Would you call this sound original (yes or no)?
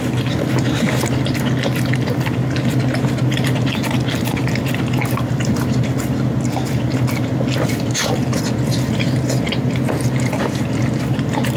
yes